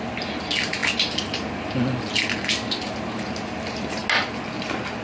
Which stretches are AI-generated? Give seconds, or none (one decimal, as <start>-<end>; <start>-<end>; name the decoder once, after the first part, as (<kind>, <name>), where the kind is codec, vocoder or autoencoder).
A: none